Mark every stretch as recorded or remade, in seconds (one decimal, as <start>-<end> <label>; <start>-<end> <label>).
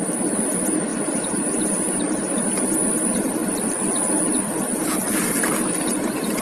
0.0-3.4 remade; 3.4-5.7 recorded; 5.7-6.4 remade